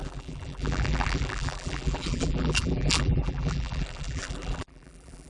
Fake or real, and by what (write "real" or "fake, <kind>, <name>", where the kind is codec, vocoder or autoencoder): fake, vocoder, BigVGAN v2